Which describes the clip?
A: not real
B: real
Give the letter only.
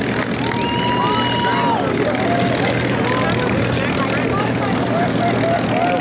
B